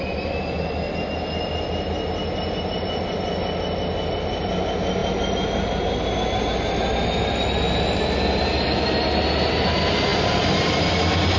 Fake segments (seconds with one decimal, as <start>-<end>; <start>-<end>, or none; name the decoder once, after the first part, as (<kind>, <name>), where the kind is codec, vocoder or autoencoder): 0.4-0.9 (vocoder, BigVGAN v2)